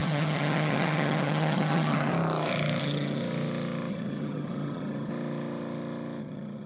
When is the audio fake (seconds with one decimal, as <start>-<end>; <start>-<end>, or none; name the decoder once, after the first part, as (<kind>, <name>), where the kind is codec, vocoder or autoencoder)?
0.0-2.1 (vocoder, HiFi-GAN); 2.8-3.2; 3.9-5.1; 6.2-6.7